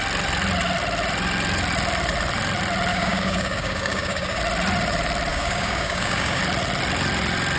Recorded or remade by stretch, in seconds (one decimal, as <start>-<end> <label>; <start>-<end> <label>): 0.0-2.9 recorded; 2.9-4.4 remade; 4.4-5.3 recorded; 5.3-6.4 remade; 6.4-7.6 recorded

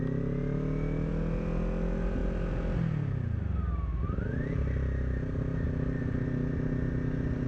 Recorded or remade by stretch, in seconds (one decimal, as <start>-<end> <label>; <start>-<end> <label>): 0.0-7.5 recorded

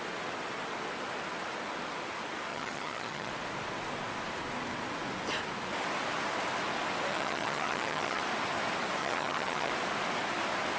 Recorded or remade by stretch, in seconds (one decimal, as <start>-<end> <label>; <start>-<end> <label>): 0.0-2.5 recorded; 2.5-3.3 remade; 3.3-7.1 recorded; 7.1-8.2 remade; 8.2-9.0 recorded; 9.0-9.7 remade; 9.7-10.8 recorded

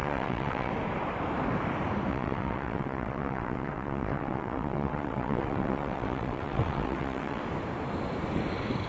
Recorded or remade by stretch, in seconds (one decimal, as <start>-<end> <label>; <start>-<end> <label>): 0.0-0.7 remade; 0.7-2.1 recorded; 2.1-7.4 remade; 7.4-8.9 recorded

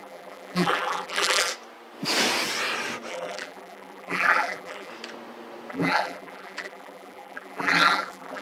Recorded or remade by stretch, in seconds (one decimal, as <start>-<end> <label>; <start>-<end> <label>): 0.0-1.5 remade; 1.5-3.1 recorded; 3.1-4.9 remade; 4.9-5.7 recorded; 5.7-8.4 remade

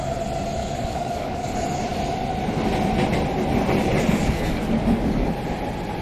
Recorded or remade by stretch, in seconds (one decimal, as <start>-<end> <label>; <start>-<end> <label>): 0.0-0.6 recorded; 0.6-1.5 remade; 1.5-4.1 recorded; 4.1-5.3 remade; 5.3-6.0 recorded

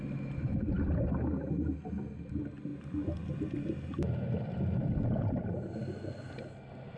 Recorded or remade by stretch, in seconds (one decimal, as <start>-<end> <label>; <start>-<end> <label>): 0.0-7.0 recorded

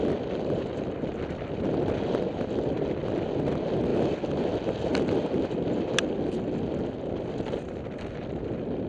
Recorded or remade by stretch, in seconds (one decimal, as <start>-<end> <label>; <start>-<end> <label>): 0.0-8.9 recorded